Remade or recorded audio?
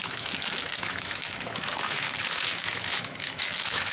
remade